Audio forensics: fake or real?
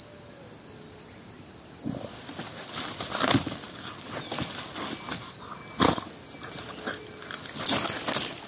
real